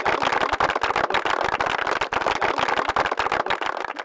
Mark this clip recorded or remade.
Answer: recorded